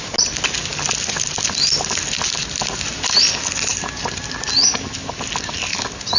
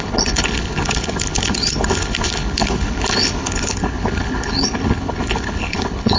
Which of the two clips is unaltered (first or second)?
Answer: first